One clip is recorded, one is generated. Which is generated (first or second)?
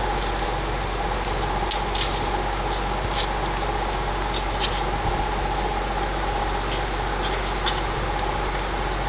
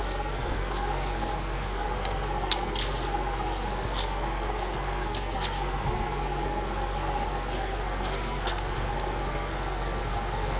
second